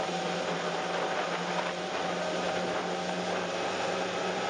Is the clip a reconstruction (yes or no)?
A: no